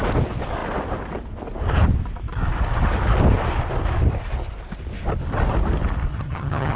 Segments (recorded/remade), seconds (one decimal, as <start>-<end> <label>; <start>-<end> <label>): 0.0-6.1 recorded; 6.1-6.8 remade